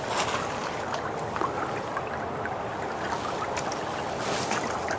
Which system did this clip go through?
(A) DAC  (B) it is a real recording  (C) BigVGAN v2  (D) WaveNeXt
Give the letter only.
B